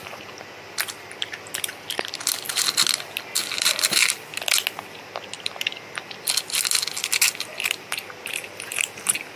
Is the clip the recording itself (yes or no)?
yes